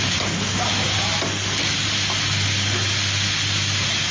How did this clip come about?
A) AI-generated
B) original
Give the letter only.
B